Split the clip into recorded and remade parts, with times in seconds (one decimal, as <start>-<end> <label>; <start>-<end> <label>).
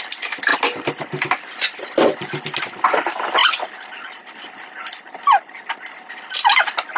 0.0-7.0 recorded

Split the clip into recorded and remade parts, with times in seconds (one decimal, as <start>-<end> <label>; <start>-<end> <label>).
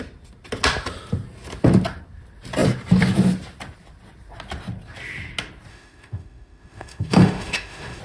0.0-5.7 recorded; 5.7-8.0 remade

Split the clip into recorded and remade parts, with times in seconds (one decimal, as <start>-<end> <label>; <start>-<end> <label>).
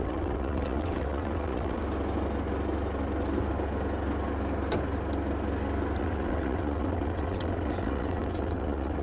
0.0-1.8 remade; 1.8-6.0 recorded; 6.0-9.0 remade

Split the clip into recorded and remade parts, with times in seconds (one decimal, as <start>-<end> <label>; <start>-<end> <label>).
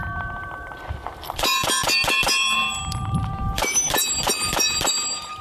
0.0-5.4 remade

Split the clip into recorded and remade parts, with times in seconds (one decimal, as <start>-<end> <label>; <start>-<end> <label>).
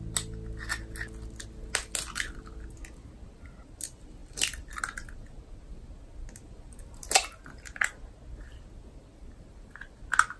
0.0-4.2 recorded; 4.2-4.8 remade; 4.8-10.4 recorded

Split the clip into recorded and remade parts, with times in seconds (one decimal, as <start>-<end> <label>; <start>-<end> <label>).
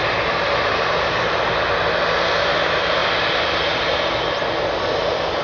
0.0-1.5 remade; 1.5-5.4 recorded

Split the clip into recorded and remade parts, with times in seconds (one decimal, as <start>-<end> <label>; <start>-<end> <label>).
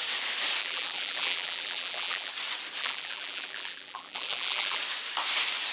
0.0-0.6 recorded; 0.6-2.3 remade; 2.3-2.8 recorded; 2.8-4.8 remade; 4.8-5.7 recorded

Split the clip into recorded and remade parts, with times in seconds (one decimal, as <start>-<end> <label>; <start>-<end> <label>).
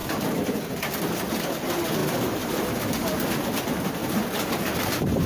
0.0-2.0 recorded; 2.0-2.7 remade; 2.7-4.0 recorded; 4.0-5.3 remade